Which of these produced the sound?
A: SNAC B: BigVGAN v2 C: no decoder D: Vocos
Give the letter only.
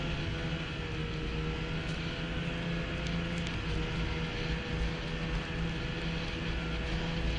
C